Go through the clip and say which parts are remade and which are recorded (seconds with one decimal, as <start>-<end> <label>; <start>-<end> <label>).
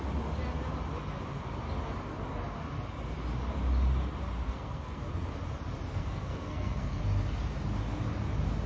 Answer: 0.0-4.4 recorded; 4.4-5.0 remade; 5.0-5.9 recorded; 5.9-7.0 remade; 7.0-8.7 recorded